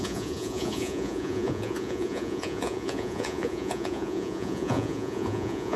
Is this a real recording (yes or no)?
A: no